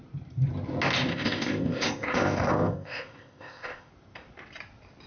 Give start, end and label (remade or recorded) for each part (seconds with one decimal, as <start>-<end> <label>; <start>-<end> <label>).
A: 0.0-1.1 recorded; 1.1-3.9 remade; 3.9-5.1 recorded